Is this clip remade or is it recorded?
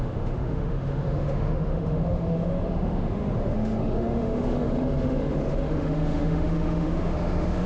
remade